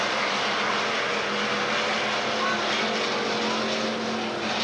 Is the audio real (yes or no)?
yes